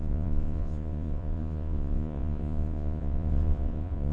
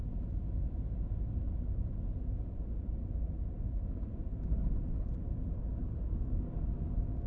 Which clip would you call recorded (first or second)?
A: second